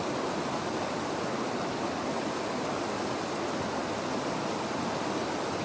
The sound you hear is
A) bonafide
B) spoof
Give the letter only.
A